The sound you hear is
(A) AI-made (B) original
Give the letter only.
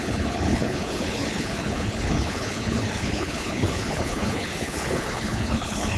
A